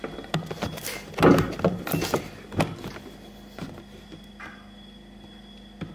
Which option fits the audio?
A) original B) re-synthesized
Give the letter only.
A